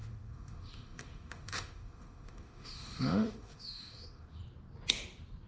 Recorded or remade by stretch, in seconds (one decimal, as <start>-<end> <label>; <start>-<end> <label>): 0.0-4.4 remade; 4.4-5.5 recorded